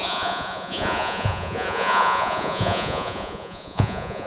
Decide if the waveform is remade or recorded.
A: remade